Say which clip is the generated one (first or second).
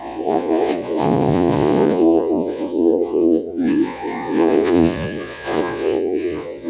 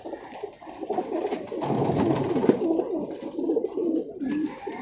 first